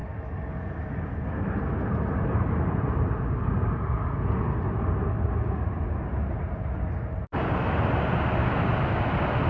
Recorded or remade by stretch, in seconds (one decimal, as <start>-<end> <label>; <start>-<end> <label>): 0.0-9.5 recorded